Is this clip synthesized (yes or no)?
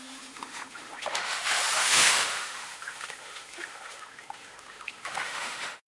yes